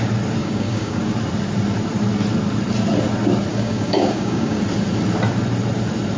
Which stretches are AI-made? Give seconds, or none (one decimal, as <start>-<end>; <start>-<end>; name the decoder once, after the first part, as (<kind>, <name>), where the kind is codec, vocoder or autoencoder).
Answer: 0.4-1.0 (codec, DAC); 3.5-4.6